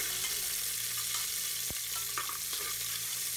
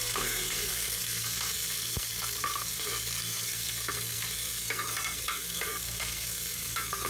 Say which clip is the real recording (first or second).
first